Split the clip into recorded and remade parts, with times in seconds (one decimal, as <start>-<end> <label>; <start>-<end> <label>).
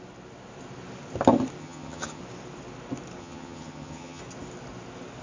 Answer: 0.0-1.6 recorded; 1.6-2.2 remade; 2.2-3.2 recorded; 3.2-4.2 remade; 4.2-5.2 recorded